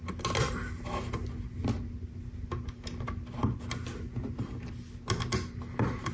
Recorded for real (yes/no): yes